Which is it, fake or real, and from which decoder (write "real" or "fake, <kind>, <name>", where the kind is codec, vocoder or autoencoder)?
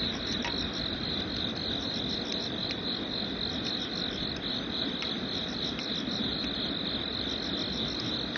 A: real